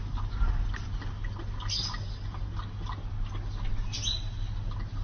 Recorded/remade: recorded